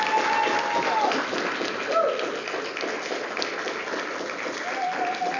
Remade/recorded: recorded